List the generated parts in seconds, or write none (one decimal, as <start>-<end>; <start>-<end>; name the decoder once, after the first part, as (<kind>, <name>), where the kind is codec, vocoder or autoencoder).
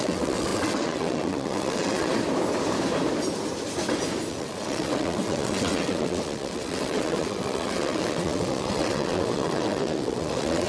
0.0-2.1 (vocoder, WaveNeXt); 4.3-10.7